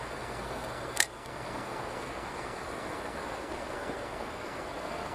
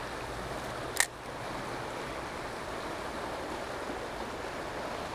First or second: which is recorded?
second